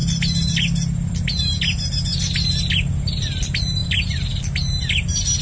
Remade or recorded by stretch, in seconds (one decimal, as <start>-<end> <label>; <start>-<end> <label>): 0.0-5.4 recorded